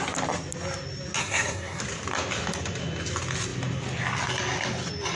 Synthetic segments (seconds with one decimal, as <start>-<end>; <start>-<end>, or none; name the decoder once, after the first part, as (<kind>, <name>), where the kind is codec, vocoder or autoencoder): 1.2-1.8 (codec, SNAC)